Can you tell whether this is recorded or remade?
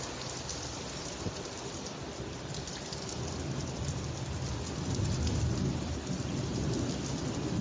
recorded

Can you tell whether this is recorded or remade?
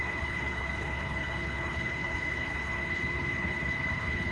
remade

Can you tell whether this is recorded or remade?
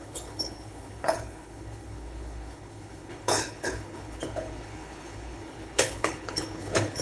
remade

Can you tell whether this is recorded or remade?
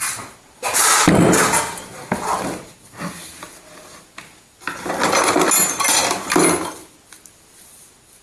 recorded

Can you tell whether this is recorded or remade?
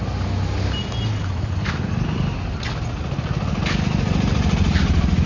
recorded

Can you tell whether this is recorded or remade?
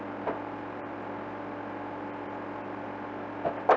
recorded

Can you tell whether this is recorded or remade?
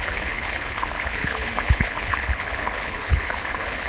remade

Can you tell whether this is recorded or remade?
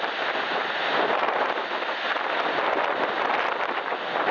recorded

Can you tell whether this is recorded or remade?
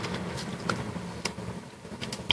recorded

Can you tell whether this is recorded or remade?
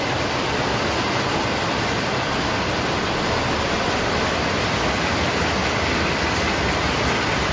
recorded